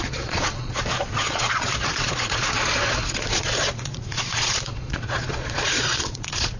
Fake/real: fake